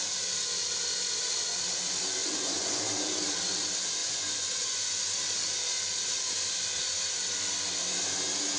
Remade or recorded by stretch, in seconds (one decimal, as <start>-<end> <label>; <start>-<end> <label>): 0.0-2.2 recorded; 2.2-2.8 remade; 2.8-4.0 recorded; 4.0-5.0 remade; 5.0-8.6 recorded